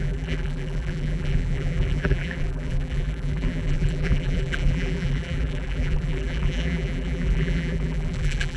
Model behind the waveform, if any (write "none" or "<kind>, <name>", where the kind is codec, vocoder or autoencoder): vocoder, BigVGAN v2